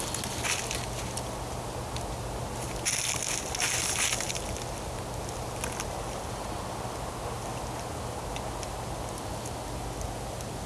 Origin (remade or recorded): recorded